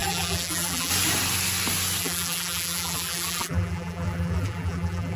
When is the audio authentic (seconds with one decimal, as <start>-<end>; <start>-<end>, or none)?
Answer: 0.9-2.0